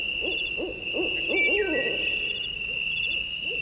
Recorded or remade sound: recorded